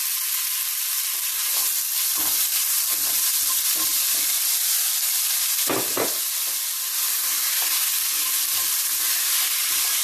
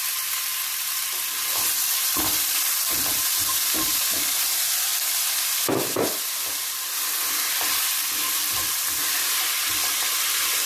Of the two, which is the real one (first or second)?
first